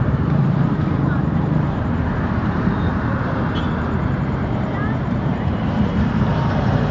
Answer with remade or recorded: remade